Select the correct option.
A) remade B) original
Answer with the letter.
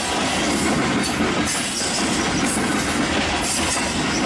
B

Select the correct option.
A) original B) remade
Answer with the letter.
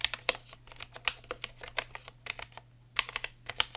A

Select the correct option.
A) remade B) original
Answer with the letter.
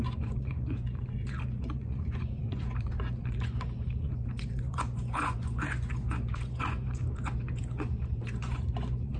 A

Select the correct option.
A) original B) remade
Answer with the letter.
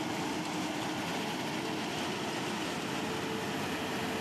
A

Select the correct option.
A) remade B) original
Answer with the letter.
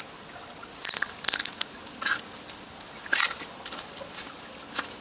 B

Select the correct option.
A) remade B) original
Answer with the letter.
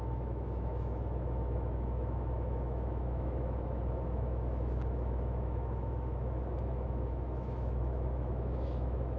A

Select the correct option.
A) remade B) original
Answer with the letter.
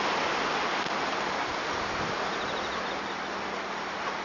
B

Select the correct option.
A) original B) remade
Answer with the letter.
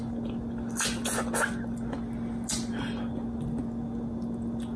A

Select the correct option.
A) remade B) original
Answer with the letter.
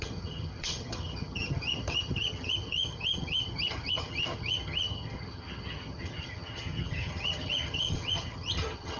A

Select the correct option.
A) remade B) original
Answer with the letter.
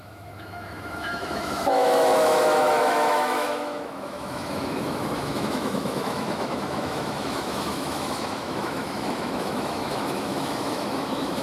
A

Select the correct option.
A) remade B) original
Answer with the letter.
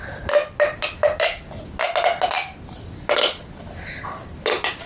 B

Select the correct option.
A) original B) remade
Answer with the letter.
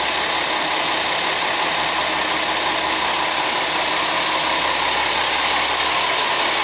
A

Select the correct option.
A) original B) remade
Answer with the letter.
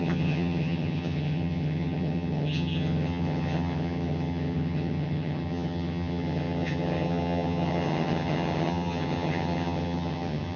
B